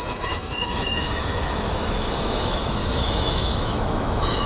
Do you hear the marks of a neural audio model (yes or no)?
yes